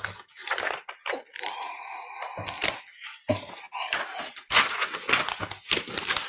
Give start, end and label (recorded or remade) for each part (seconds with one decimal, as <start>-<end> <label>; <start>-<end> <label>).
0.0-6.3 recorded